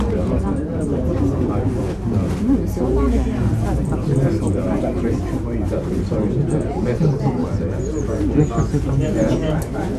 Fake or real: fake